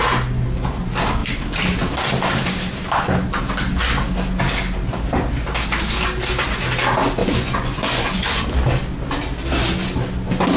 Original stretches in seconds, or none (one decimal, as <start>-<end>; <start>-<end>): 0.0-7.2; 8.4-10.6